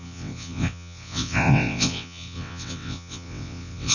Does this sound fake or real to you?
fake